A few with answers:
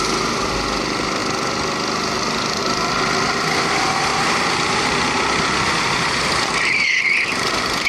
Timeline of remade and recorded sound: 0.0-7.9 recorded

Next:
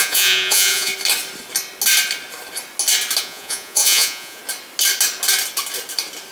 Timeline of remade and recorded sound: 0.0-0.9 remade; 0.9-3.2 recorded; 3.2-4.4 remade; 4.4-6.3 recorded

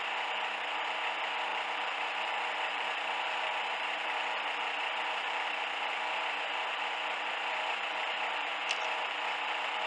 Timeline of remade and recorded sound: 0.0-9.9 remade

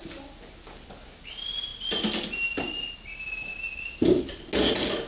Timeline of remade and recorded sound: 0.0-5.1 recorded

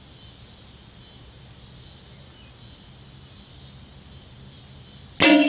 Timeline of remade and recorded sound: 0.0-5.5 recorded

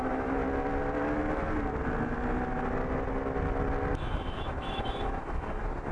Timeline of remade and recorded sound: 0.0-0.4 remade; 0.4-3.9 recorded; 3.9-5.9 remade